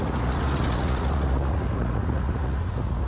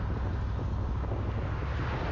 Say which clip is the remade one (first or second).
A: first